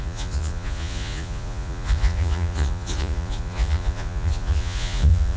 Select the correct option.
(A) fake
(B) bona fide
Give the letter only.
A